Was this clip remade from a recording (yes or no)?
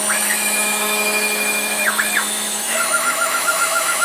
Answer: yes